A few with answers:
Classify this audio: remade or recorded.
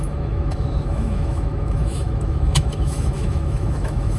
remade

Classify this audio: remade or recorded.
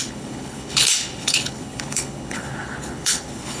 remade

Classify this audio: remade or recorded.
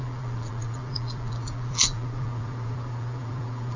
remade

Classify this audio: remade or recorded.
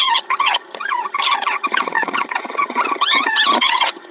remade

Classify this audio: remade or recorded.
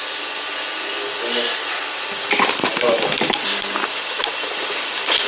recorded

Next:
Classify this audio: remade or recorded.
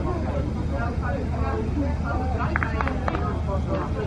recorded